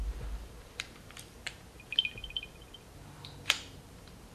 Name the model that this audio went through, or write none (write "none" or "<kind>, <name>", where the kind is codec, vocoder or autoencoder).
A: vocoder, BigVGAN v2